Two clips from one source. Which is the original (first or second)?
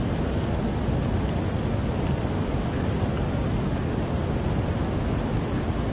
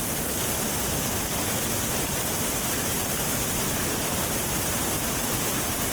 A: first